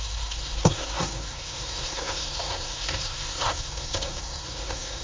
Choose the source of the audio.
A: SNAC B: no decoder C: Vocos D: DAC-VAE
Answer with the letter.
A